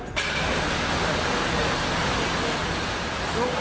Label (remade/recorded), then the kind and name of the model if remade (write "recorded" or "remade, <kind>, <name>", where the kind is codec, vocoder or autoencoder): recorded